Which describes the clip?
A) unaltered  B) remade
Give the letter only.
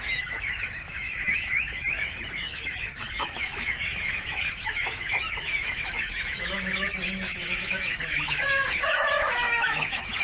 B